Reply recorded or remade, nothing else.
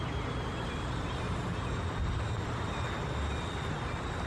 recorded